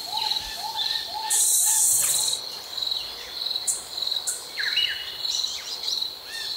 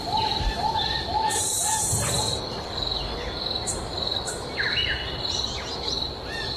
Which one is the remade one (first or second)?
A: first